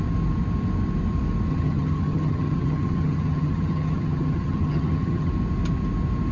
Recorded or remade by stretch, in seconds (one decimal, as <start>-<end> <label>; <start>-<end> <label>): 0.0-1.5 recorded; 1.5-5.3 remade; 5.3-6.3 recorded